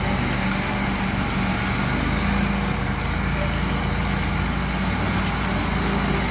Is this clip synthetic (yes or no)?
no